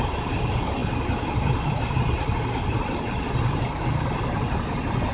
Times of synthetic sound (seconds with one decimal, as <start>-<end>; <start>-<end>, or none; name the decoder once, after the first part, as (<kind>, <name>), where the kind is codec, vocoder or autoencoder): none